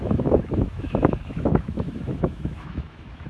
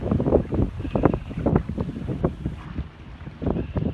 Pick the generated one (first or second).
first